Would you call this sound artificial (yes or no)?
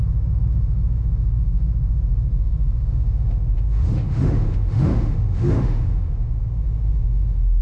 yes